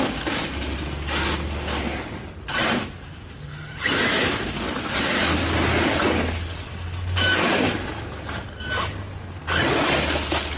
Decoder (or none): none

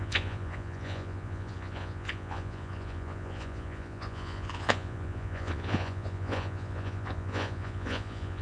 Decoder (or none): vocoder, Vocos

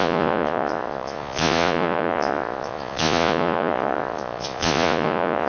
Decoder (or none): vocoder, Vocos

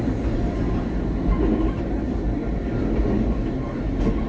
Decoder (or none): none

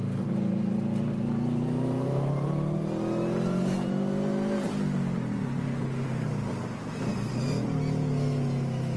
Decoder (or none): none